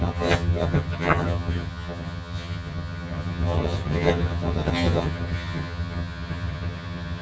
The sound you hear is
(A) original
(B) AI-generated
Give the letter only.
B